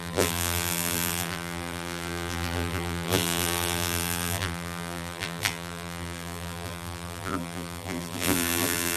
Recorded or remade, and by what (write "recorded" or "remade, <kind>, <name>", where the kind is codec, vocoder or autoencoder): remade, vocoder, BigVGAN v2